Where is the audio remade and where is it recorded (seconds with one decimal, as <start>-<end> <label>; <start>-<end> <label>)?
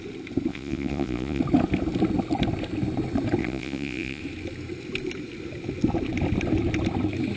0.0-0.5 recorded; 0.5-1.4 remade; 1.4-3.4 recorded; 3.4-4.2 remade; 4.2-7.4 recorded